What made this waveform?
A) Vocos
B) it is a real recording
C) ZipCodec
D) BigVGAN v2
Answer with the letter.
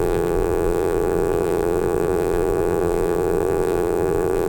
D